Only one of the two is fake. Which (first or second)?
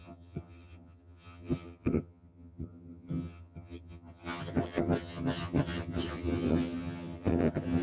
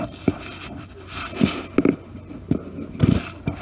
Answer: first